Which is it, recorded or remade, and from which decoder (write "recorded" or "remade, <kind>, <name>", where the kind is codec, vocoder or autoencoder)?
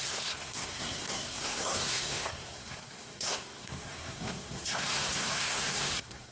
remade, codec, SNAC